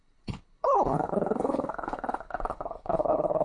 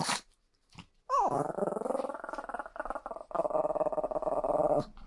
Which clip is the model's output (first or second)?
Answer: first